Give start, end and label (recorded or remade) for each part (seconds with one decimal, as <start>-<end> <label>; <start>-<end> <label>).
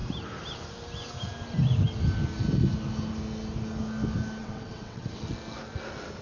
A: 0.0-4.4 recorded; 4.4-5.2 remade; 5.2-6.2 recorded